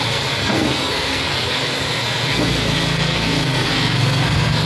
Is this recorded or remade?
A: remade